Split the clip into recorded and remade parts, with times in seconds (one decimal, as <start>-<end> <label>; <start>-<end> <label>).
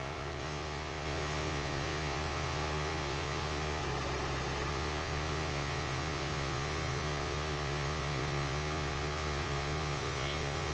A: 0.0-3.8 remade; 3.8-4.7 recorded; 4.7-10.7 remade